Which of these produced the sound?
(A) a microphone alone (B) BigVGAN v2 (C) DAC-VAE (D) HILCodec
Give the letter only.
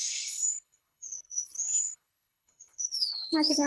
D